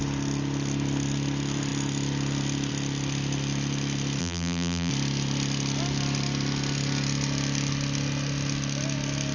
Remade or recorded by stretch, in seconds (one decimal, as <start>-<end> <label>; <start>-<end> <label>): 0.0-4.2 recorded; 4.2-4.9 remade; 4.9-9.3 recorded